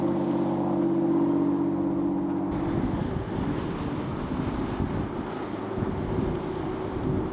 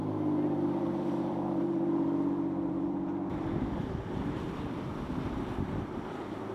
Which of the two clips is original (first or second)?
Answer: first